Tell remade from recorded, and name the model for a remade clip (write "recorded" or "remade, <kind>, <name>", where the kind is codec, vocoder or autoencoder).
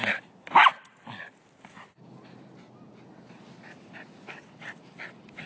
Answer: recorded